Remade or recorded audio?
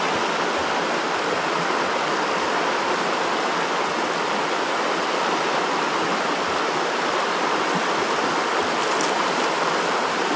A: recorded